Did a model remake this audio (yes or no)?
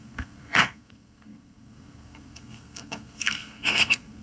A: yes